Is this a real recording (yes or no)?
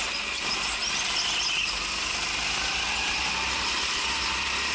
yes